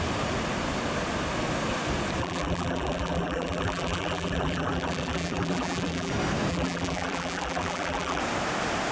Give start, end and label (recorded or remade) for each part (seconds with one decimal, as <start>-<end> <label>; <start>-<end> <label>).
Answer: 0.0-2.2 recorded; 2.2-6.1 remade; 6.1-6.5 recorded; 6.5-8.2 remade; 8.2-8.9 recorded